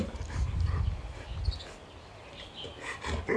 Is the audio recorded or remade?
recorded